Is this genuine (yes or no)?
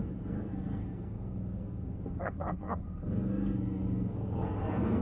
no